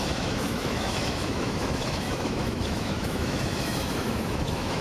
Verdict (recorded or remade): remade